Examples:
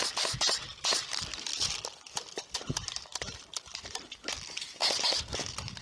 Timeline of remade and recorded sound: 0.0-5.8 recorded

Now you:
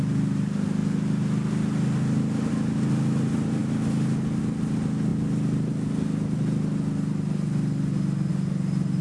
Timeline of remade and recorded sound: 0.0-9.0 recorded